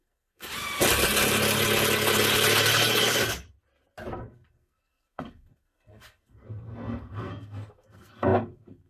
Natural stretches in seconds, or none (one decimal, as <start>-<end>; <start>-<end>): 0.5-4.1